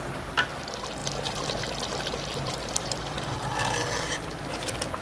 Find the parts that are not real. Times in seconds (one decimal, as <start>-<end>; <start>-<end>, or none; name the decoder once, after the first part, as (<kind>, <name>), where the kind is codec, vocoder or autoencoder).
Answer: 1.0-1.6 (vocoder, BigVGAN v2); 2.3-3.3